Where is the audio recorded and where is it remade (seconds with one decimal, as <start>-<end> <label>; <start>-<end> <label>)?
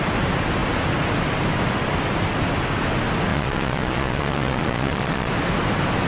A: 0.0-3.3 recorded; 3.3-5.3 remade; 5.3-6.1 recorded